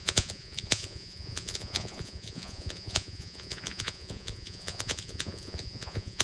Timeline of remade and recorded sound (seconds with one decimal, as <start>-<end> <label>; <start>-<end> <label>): 0.0-6.2 remade